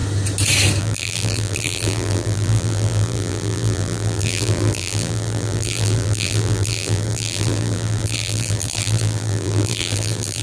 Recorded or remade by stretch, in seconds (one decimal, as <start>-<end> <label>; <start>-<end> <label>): 0.0-0.8 recorded; 0.8-10.4 remade